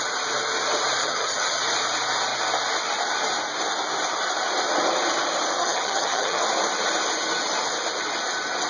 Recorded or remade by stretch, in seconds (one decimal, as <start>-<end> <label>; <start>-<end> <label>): 0.0-1.0 recorded; 1.0-1.6 remade; 1.6-5.6 recorded; 5.6-6.4 remade; 6.4-8.7 recorded